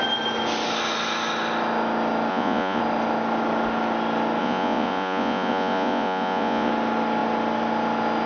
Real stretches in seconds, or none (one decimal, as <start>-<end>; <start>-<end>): 0.0-2.3; 2.8-4.4; 6.7-8.3